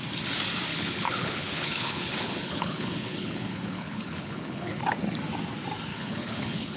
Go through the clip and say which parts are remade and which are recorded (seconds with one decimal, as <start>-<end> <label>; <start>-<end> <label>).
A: 0.0-0.7 recorded; 0.7-4.8 remade; 4.8-5.9 recorded; 5.9-6.8 remade